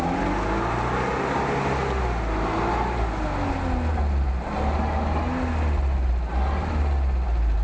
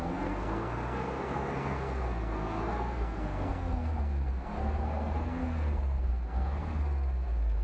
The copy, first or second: second